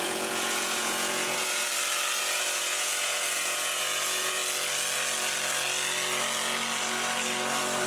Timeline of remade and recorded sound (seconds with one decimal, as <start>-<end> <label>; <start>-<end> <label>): 0.0-1.7 remade; 1.7-2.2 recorded; 2.2-4.4 remade; 4.4-7.9 recorded